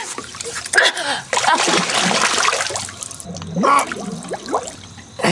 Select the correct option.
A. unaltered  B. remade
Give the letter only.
A